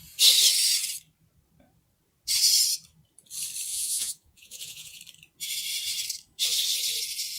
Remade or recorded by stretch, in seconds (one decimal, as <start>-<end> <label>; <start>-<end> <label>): 0.0-3.7 recorded; 3.7-5.0 remade; 5.0-7.4 recorded